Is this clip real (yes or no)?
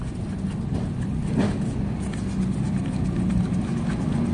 yes